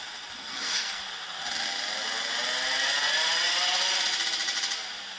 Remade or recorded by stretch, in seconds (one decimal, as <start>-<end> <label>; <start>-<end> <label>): 0.0-0.4 recorded; 0.4-1.0 remade; 1.0-5.2 recorded